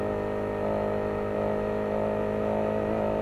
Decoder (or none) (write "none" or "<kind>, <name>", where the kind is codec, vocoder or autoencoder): none